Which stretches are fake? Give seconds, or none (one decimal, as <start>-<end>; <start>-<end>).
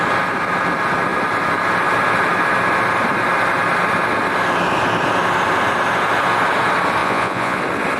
7.0-7.6